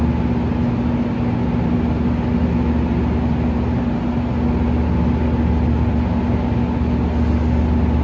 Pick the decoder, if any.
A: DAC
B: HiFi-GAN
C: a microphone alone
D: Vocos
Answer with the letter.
C